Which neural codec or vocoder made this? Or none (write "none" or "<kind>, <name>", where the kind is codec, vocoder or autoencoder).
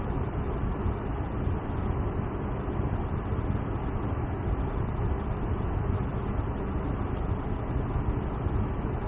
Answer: none